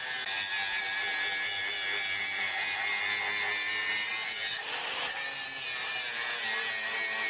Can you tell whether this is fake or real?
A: real